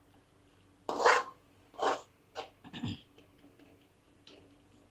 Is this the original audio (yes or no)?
yes